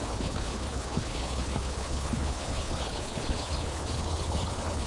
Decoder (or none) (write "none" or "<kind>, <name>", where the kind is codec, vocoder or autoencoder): codec, HILCodec